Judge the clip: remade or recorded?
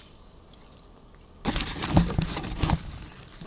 recorded